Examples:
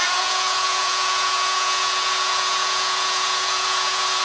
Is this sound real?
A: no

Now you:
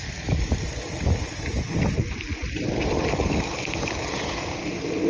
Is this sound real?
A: no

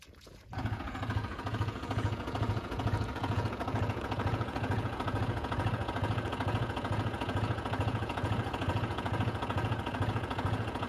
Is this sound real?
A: no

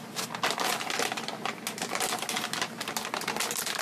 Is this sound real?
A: yes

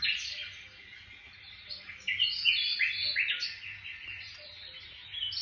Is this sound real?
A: yes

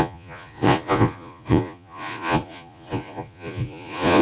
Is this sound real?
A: no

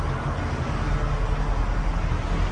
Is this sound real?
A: yes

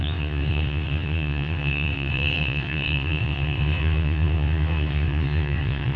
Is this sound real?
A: no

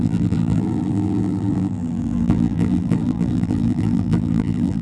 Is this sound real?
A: no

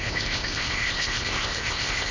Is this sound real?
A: no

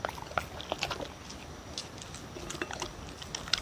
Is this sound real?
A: yes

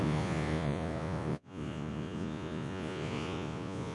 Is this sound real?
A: no